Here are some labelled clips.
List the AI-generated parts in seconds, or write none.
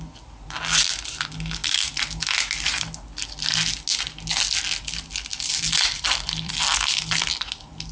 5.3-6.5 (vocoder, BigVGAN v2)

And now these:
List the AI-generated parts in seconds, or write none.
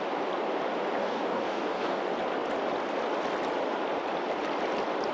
1.0-2.0 (codec, DAC)